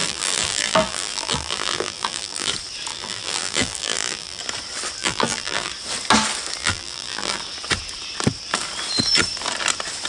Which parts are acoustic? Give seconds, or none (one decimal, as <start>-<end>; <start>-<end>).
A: 2.5-2.9; 4.4-5.0; 5.7-6.6; 7.4-10.1